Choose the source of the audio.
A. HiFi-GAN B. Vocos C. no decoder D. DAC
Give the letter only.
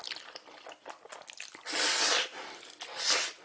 C